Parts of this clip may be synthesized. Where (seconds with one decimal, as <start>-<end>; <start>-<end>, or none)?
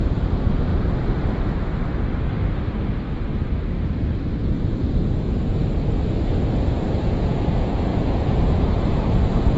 0.0-0.7; 4.4-9.6